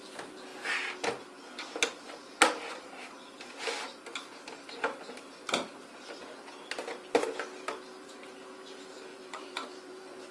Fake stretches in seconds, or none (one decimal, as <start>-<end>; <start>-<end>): 9.1-10.3